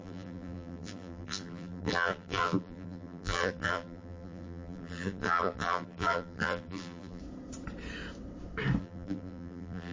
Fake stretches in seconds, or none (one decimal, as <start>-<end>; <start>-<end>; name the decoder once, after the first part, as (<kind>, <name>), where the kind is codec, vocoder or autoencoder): 0.0-7.2 (vocoder, BigVGAN v2); 8.8-9.9

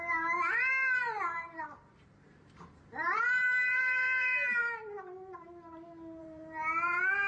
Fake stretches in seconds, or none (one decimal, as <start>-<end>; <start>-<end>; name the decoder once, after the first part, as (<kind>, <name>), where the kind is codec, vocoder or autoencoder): 0.0-4.6 (vocoder, BigVGAN v2); 6.2-7.3

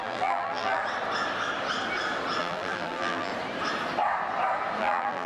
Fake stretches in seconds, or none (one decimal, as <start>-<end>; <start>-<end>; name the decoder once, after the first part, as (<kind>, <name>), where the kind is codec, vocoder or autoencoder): 0.0-0.8 (vocoder, BigVGAN v2); 2.4-3.3; 4.8-5.3